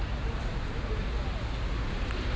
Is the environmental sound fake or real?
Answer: real